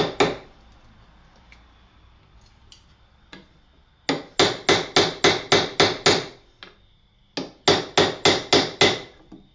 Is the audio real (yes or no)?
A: yes